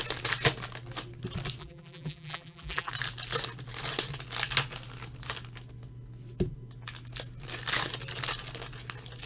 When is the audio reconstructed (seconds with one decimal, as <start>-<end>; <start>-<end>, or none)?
1.6-2.9